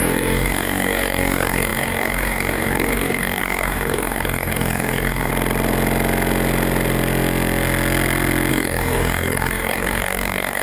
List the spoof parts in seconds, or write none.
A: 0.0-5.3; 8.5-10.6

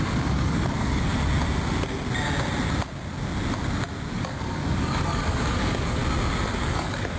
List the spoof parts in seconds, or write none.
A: 0.0-1.1; 4.1-6.0; 6.6-7.2

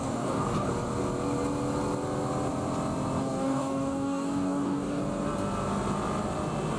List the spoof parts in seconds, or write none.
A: 0.0-0.7; 3.2-5.0